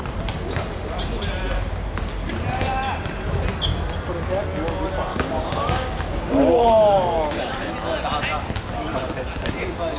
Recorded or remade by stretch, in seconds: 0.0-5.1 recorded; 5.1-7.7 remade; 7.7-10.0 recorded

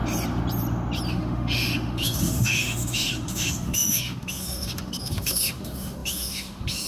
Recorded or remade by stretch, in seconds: 0.0-1.1 recorded; 1.1-6.9 remade

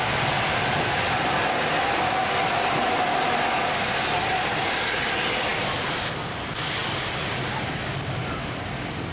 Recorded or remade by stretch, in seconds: 0.0-9.1 recorded

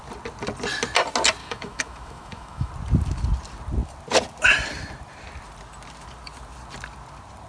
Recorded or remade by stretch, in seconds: 0.0-1.4 recorded; 1.4-2.7 remade; 2.7-7.5 recorded

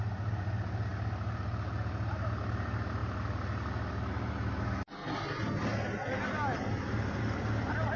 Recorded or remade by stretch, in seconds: 0.0-8.0 recorded